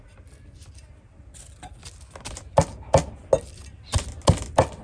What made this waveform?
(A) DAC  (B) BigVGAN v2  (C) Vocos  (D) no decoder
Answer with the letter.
D